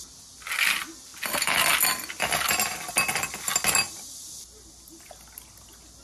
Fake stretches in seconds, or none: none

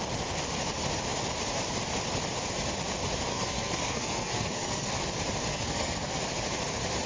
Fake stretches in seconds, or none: 3.3-4.9 (codec, SNAC); 5.5-6.2

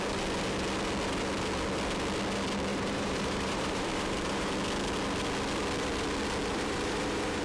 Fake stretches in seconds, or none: 2.7-4.5 (vocoder, BigVGAN v2); 6.5-7.4